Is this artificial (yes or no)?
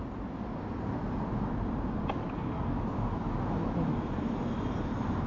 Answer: no